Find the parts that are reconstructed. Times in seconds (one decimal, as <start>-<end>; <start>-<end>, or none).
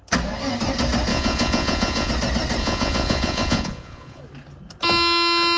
1.1-2.1; 2.6-4.2